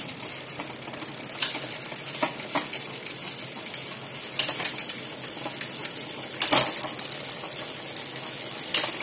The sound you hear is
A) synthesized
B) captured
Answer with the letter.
B